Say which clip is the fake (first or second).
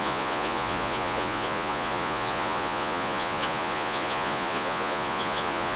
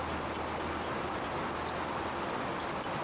first